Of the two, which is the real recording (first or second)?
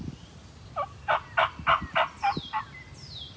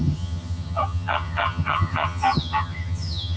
first